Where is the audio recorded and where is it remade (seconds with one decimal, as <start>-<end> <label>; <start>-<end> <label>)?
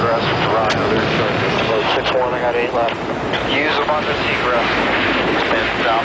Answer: 0.0-6.0 recorded